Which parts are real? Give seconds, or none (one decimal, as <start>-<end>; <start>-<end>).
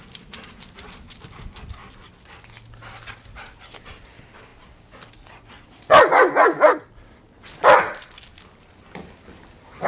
0.0-9.9